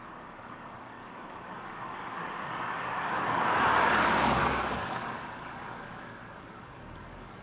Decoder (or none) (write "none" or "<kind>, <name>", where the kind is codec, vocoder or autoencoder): codec, DAC